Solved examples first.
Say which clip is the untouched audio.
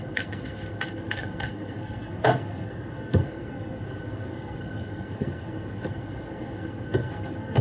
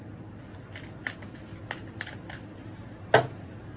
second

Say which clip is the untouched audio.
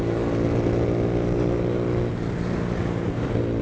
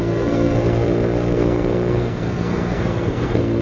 first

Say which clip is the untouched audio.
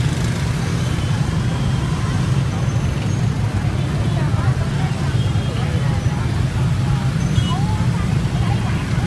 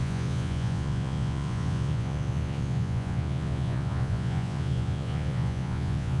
first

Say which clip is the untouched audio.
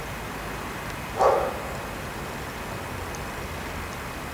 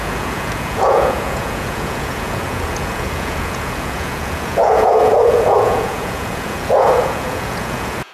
first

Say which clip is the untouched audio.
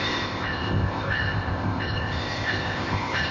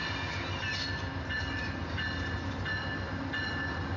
second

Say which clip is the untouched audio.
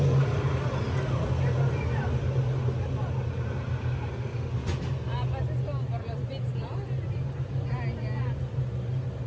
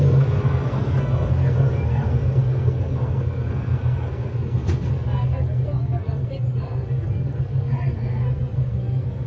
first